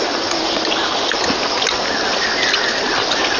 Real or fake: real